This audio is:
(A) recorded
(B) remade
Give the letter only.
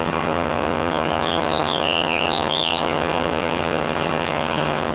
B